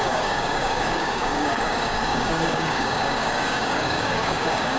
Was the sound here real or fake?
fake